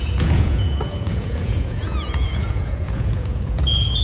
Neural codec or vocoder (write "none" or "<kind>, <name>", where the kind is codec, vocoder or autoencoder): vocoder, Vocos